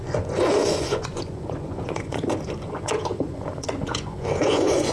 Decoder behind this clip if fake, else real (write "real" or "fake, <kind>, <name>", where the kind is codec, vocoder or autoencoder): fake, vocoder, Vocos